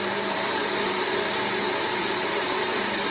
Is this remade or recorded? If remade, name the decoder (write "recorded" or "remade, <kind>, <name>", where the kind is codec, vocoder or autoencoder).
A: remade, vocoder, BigVGAN v2